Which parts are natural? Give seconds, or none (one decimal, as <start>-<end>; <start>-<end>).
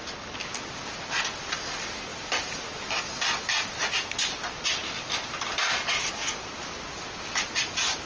0.0-2.1; 3.0-5.6; 6.1-8.1